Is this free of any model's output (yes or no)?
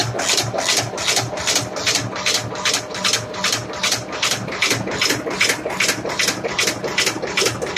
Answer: yes